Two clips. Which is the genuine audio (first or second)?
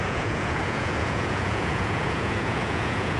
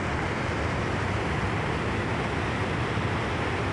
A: second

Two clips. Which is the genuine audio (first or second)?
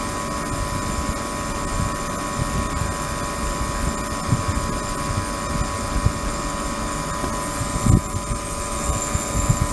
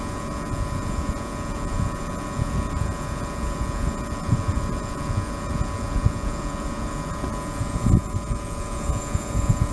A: first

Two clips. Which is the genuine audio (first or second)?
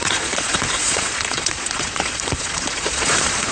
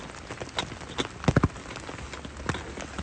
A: second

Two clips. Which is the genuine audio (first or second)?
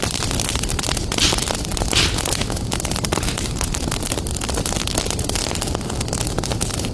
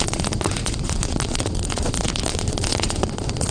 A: first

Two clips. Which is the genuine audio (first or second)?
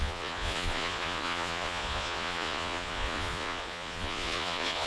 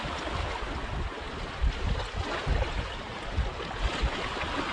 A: second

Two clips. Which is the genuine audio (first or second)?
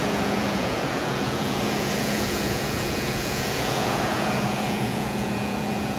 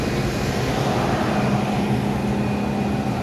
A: second